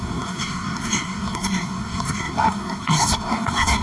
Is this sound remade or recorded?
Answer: remade